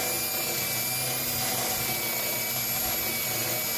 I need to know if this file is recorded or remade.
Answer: recorded